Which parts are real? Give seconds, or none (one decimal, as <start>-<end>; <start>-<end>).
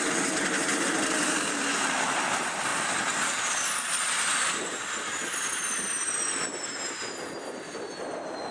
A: 0.0-8.5